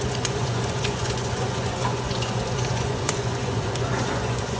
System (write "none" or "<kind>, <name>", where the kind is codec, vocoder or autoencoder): vocoder, Vocos